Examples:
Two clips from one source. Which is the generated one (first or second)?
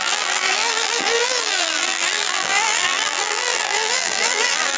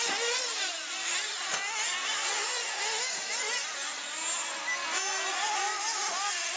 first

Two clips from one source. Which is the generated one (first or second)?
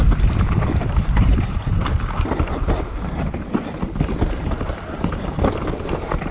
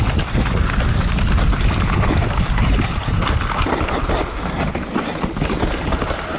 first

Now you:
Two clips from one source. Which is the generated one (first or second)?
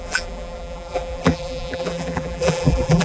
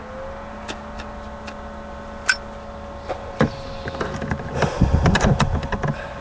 first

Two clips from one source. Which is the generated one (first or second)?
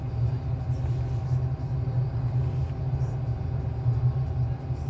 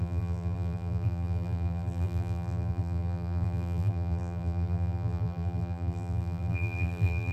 second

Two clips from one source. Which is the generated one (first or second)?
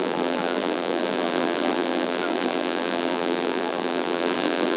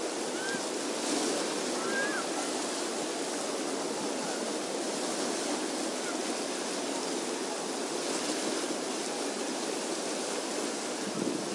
first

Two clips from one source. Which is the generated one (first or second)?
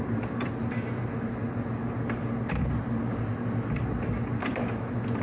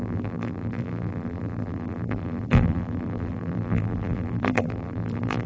second